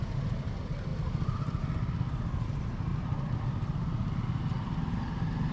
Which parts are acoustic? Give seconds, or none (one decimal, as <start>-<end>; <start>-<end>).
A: 0.0-0.9; 1.6-2.9; 3.5-5.5